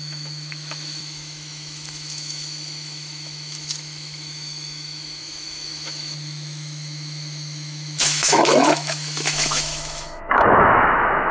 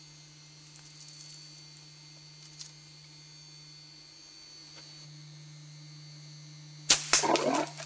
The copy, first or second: first